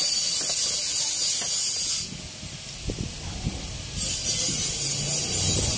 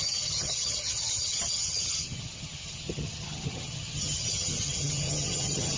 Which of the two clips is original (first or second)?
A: first